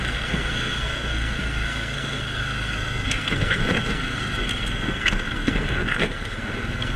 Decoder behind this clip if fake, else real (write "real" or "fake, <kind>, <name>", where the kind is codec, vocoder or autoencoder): fake, codec, SNAC